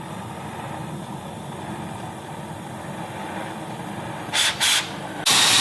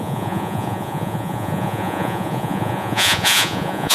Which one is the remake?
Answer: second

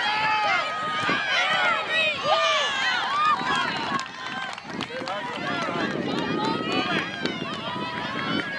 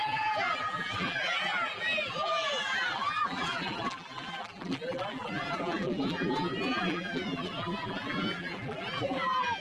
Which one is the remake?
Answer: second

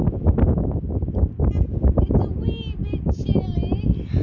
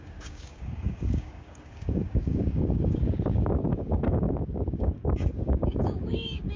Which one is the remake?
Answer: second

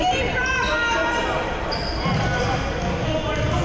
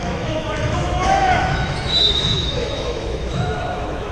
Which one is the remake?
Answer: second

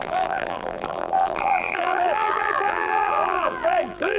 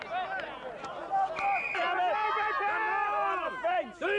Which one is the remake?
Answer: first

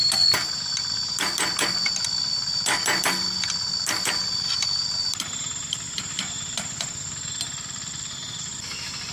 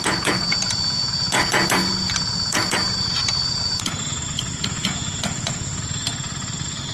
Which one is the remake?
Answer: second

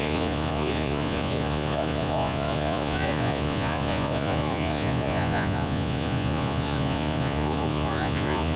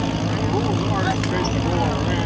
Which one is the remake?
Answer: first